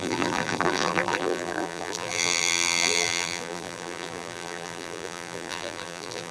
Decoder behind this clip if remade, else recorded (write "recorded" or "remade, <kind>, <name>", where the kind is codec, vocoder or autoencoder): remade, vocoder, BigVGAN v2